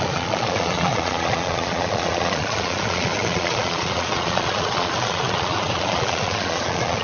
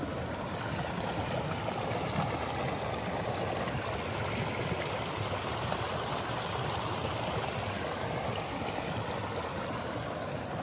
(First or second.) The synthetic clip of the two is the first